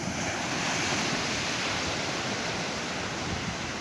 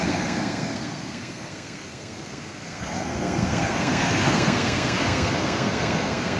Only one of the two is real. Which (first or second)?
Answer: first